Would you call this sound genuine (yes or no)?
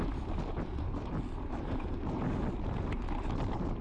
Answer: yes